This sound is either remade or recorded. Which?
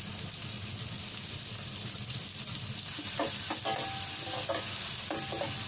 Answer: recorded